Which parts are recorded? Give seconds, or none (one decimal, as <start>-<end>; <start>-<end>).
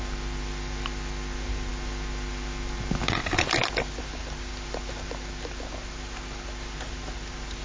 0.0-7.6